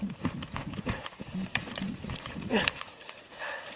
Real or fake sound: fake